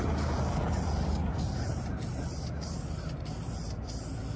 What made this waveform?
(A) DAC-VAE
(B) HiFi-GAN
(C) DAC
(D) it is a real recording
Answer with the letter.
D